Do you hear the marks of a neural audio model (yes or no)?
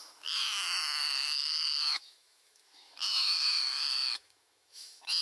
yes